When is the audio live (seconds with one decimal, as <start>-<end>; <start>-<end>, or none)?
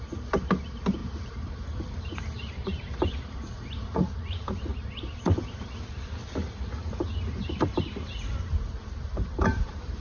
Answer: 4.7-5.8; 6.4-7.8